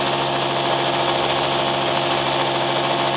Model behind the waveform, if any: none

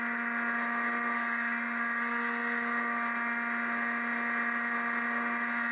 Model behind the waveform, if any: none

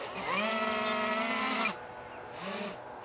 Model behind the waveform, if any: none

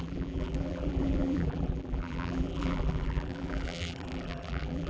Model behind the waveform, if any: vocoder, BigVGAN v2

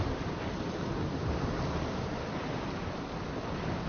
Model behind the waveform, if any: none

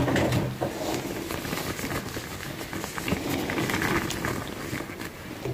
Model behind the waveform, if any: none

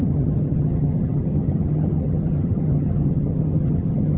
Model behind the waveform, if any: vocoder, HiFi-GAN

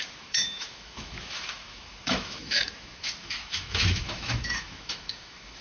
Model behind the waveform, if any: autoencoder, DAC-VAE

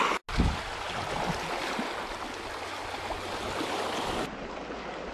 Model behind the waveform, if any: none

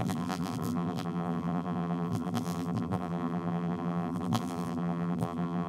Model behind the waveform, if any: vocoder, BigVGAN v2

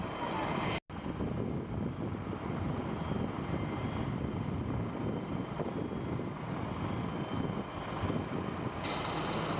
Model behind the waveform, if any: none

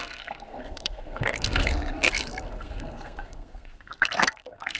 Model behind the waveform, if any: codec, SNAC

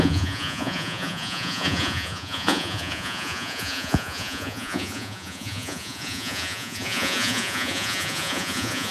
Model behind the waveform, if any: vocoder, Vocos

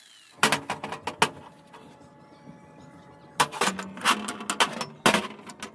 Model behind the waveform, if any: none